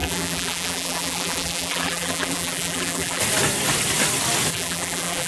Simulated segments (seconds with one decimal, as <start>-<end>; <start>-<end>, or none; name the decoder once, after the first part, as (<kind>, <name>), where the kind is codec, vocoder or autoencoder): 0.0-3.2 (vocoder, BigVGAN v2); 4.5-5.3